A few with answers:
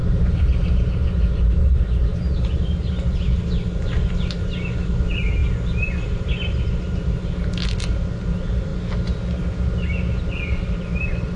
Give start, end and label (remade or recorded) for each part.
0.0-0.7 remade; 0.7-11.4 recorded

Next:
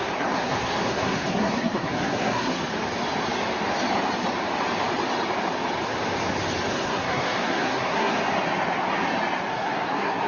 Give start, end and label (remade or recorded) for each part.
0.0-2.6 remade; 2.6-6.7 recorded; 6.7-8.2 remade; 8.2-9.5 recorded; 9.5-10.3 remade

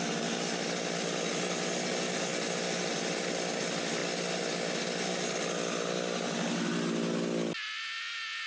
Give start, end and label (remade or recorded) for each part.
0.0-8.5 recorded

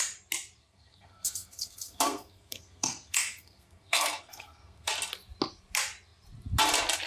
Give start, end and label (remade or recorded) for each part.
0.0-0.6 recorded; 0.6-4.9 remade; 4.9-7.1 recorded